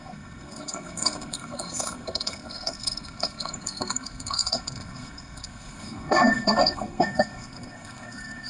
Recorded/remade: remade